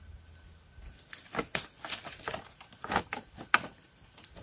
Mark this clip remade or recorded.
recorded